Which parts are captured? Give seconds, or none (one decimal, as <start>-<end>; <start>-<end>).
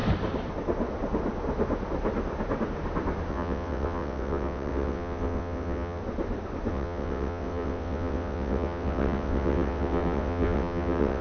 0.0-3.3; 6.0-6.7